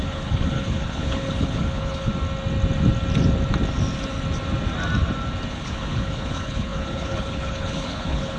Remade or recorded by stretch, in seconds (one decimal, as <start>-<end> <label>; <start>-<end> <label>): 0.0-2.1 remade; 2.1-5.5 recorded; 5.5-8.4 remade